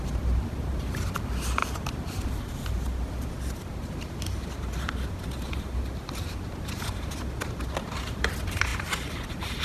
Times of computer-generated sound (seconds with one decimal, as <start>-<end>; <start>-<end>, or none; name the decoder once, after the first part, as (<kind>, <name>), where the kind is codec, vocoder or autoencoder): none